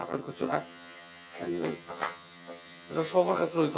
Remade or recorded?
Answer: remade